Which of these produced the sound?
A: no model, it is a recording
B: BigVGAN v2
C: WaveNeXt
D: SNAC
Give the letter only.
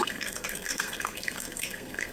D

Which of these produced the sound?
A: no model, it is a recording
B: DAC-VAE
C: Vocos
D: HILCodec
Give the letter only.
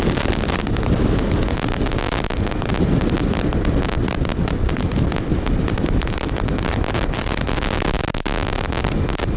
A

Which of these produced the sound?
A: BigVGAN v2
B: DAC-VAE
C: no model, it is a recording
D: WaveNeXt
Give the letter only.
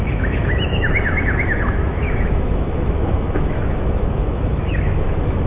B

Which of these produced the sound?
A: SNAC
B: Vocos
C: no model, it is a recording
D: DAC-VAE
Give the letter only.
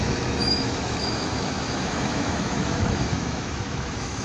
D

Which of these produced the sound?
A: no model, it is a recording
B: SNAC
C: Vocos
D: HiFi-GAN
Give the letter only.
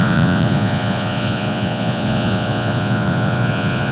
C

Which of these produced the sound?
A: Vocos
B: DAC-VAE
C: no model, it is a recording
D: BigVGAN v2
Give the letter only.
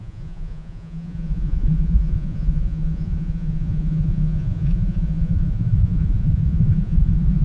A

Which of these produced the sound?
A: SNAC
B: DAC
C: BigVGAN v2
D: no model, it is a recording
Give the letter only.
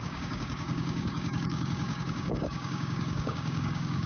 B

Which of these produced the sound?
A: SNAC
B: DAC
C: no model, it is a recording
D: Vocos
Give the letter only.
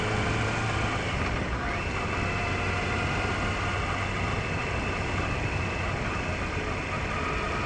C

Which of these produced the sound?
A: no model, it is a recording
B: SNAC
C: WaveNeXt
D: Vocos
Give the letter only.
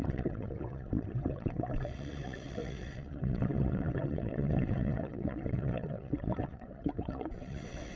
C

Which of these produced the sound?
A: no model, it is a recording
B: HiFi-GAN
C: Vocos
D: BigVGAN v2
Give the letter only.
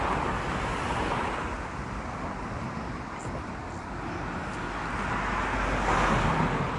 A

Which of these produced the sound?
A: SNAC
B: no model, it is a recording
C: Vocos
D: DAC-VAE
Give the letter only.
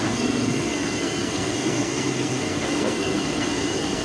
A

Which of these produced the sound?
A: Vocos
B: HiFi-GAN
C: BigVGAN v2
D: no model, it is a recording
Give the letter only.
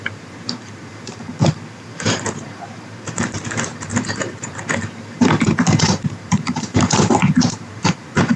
C